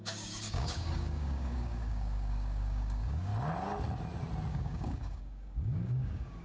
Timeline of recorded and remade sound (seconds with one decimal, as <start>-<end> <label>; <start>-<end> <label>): 0.0-3.3 remade; 3.3-4.5 recorded; 4.5-6.4 remade